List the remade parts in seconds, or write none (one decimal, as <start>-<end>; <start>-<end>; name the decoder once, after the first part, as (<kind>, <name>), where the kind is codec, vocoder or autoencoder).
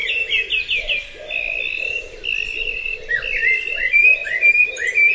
none